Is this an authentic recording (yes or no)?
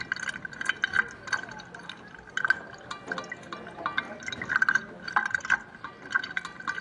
yes